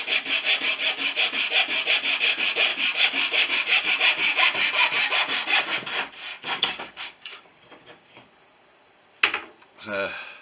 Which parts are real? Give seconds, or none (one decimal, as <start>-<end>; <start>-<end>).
0.0-2.7; 3.9-6.3; 8.3-10.4